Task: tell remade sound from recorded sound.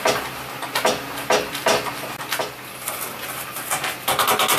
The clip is recorded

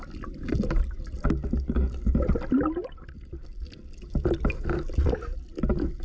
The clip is recorded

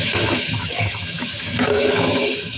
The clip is remade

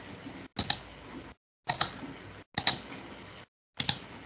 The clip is recorded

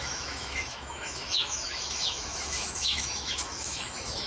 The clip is remade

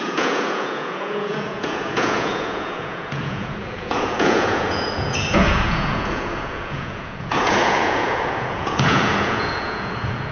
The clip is remade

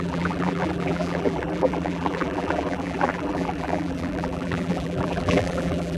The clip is remade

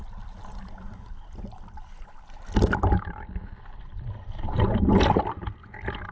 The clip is recorded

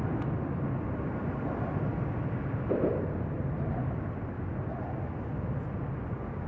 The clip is recorded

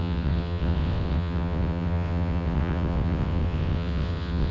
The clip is remade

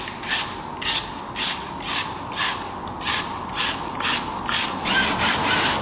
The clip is recorded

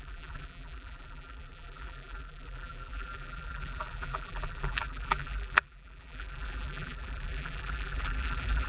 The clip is remade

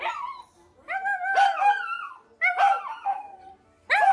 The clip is recorded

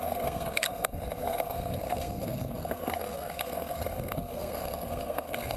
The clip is remade